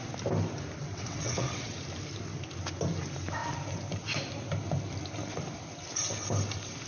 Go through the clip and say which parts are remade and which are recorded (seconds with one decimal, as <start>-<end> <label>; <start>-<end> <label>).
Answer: 0.0-0.8 recorded; 0.8-1.7 remade; 1.7-6.9 recorded